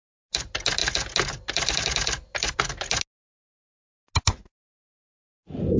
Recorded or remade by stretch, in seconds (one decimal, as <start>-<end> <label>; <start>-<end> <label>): 0.0-5.8 recorded